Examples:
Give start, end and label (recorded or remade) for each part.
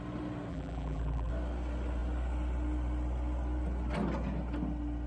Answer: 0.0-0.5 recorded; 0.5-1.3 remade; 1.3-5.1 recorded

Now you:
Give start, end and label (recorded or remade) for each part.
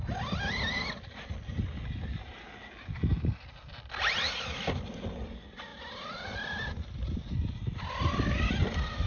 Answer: 0.0-3.1 recorded; 3.1-4.3 remade; 4.3-5.7 recorded; 5.7-7.8 remade; 7.8-9.1 recorded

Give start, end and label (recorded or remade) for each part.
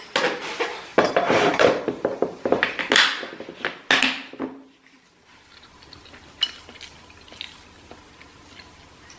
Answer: 0.0-0.9 recorded; 0.9-2.8 remade; 2.8-9.2 recorded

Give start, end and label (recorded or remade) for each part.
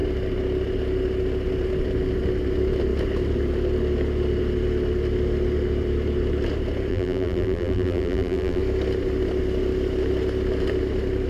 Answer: 0.0-6.9 recorded; 6.9-8.6 remade; 8.6-11.3 recorded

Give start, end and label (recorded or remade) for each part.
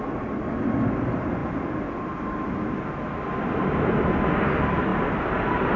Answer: 0.0-4.9 recorded; 4.9-5.8 remade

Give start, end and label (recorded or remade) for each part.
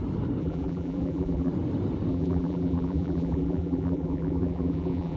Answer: 0.0-0.4 recorded; 0.4-1.5 remade; 1.5-2.1 recorded; 2.1-5.2 remade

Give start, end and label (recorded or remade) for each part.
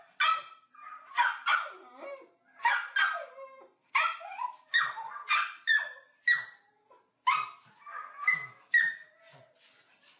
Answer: 0.0-0.4 recorded; 0.4-5.2 remade; 5.2-10.2 recorded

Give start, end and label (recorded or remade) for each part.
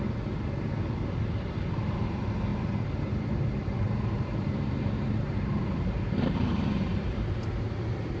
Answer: 0.0-2.5 recorded; 2.5-7.4 remade; 7.4-8.2 recorded